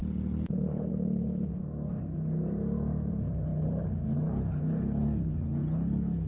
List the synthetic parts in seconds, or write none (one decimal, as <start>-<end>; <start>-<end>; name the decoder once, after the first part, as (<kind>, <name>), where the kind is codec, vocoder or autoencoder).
0.0-1.6 (codec, HILCodec); 3.1-6.3